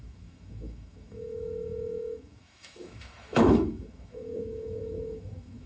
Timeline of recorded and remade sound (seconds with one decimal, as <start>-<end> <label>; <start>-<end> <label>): 0.0-5.7 remade